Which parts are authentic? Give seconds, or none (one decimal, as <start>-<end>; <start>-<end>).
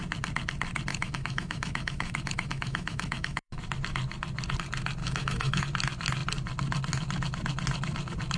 0.0-0.9; 3.6-5.0; 5.6-8.4